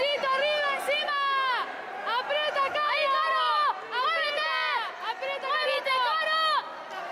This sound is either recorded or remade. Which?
recorded